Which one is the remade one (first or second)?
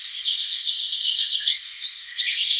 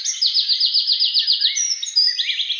first